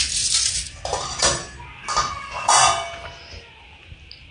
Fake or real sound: real